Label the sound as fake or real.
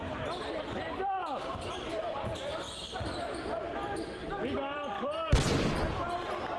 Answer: fake